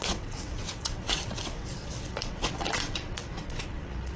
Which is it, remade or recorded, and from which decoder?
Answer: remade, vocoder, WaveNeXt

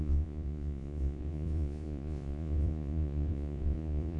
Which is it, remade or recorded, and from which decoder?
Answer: remade, vocoder, Vocos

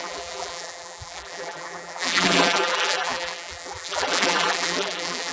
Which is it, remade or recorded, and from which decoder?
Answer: remade, vocoder, BigVGAN v2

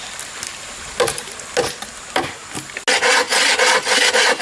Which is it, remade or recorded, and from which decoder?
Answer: recorded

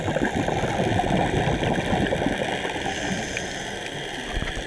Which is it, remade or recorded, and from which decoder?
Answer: recorded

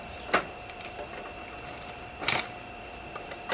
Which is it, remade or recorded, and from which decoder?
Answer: recorded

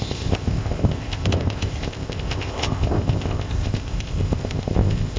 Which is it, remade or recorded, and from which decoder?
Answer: remade, codec, ZipCodec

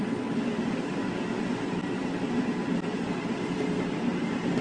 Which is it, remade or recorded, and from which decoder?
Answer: recorded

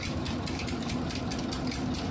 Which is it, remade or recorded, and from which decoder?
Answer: recorded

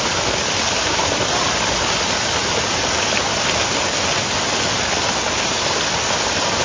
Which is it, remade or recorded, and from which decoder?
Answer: recorded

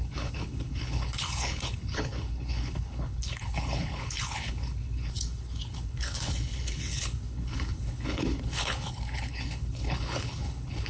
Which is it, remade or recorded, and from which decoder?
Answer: remade, codec, HILCodec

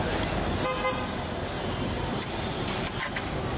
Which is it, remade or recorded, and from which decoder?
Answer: recorded